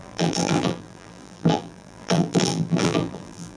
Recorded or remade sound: remade